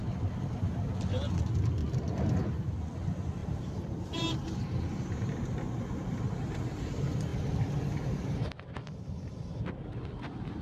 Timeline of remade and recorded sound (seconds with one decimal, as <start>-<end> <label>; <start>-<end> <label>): 0.0-1.8 recorded; 1.8-2.3 remade; 2.3-3.4 recorded; 3.4-4.3 remade; 4.3-10.6 recorded